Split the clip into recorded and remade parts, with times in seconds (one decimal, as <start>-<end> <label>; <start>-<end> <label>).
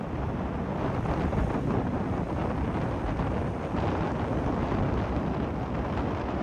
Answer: 0.0-6.4 recorded